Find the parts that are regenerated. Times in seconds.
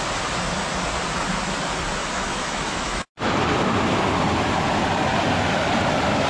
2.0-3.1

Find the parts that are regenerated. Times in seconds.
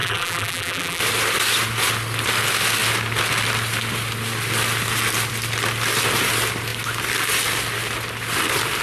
0.0-1.0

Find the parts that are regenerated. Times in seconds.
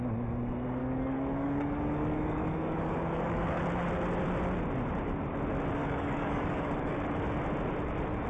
0.8-3.6; 5.8-7.1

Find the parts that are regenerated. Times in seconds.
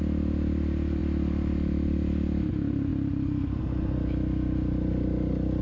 none